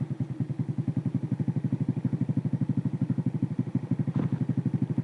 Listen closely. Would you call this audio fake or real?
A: real